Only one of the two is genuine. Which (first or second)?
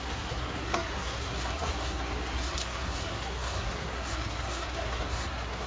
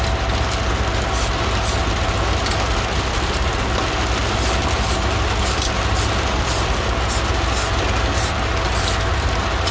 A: second